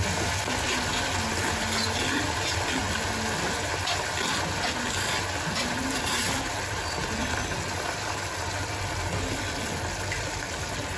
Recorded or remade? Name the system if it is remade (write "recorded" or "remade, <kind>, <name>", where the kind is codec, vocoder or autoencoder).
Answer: recorded